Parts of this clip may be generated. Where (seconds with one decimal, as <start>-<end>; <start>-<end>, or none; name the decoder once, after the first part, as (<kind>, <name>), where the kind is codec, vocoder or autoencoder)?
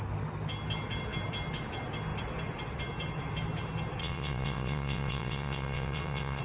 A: 4.0-6.4 (vocoder, WaveNeXt)